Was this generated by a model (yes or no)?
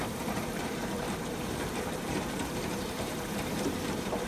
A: yes